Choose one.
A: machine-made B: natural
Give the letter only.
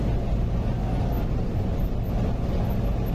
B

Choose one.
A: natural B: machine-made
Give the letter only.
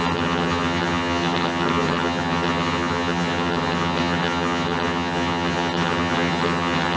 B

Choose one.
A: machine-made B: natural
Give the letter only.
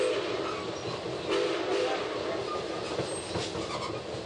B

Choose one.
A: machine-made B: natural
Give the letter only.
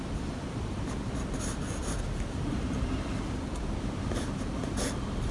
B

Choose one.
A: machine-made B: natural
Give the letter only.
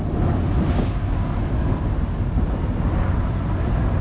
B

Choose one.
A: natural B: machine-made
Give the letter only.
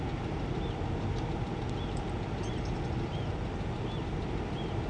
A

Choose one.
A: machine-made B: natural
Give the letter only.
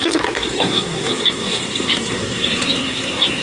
A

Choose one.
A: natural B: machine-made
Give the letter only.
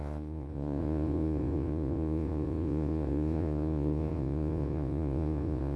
B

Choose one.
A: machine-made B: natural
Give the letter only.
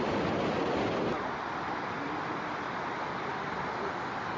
B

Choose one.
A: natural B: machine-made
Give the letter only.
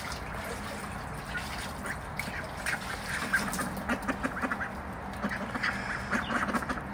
A